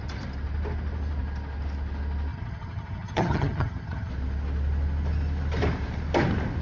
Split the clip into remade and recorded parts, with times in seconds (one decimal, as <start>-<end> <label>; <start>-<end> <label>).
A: 0.0-2.3 recorded; 2.3-4.1 remade; 4.1-6.6 recorded